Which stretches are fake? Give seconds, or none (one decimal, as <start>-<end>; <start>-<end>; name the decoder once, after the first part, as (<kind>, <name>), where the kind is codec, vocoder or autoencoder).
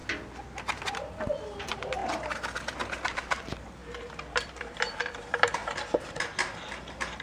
0.9-2.0 (vocoder, BigVGAN v2); 3.4-3.8; 4.4-5.6